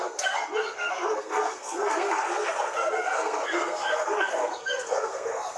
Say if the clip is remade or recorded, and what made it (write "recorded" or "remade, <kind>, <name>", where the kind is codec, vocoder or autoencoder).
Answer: remade, codec, SNAC